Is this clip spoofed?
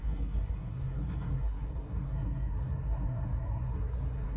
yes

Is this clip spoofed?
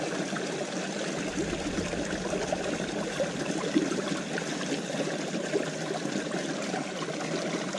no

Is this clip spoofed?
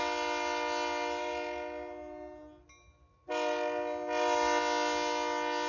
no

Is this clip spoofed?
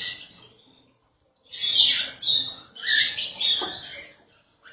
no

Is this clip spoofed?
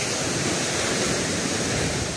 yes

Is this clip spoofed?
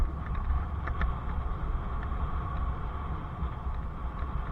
no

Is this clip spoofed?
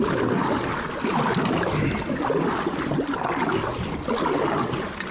no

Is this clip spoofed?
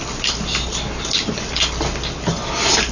no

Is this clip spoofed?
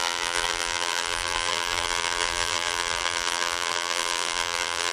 yes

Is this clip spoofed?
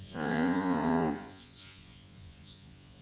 yes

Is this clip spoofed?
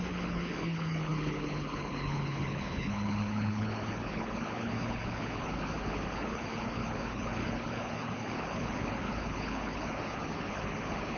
yes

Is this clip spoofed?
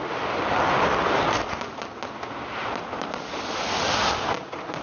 no